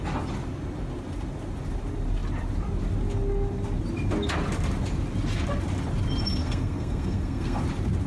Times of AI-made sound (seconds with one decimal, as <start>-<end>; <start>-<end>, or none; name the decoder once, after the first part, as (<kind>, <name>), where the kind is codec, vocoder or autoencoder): 6.4-7.6 (codec, SNAC)